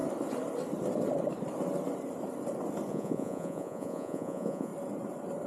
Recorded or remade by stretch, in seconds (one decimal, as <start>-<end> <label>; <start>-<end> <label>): 0.0-2.9 recorded; 2.9-4.7 remade; 4.7-5.5 recorded